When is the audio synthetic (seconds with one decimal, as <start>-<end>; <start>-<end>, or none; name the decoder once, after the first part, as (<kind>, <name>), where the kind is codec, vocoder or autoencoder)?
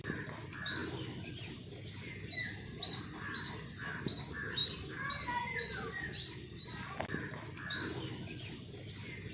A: none